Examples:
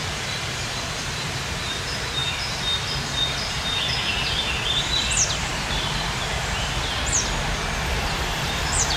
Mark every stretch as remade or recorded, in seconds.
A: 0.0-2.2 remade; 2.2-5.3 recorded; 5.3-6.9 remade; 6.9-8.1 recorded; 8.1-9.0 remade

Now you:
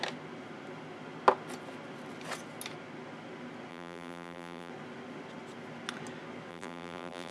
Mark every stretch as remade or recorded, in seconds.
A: 0.0-3.7 recorded; 3.7-4.7 remade; 4.7-6.5 recorded; 6.5-7.3 remade

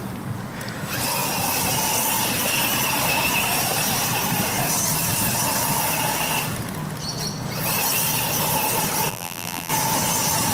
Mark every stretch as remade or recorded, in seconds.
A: 0.0-9.1 recorded; 9.1-9.7 remade; 9.7-10.5 recorded

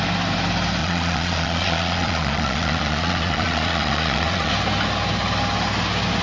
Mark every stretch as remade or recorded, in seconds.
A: 0.0-0.8 recorded; 0.8-4.5 remade; 4.5-6.2 recorded

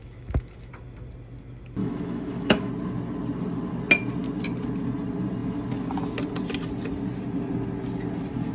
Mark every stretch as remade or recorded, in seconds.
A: 0.0-0.7 remade; 0.7-1.8 recorded; 1.8-2.7 remade; 2.7-8.5 recorded

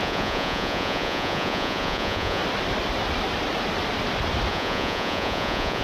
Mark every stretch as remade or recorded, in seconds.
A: 0.0-2.4 remade; 2.4-4.5 recorded; 4.5-5.8 remade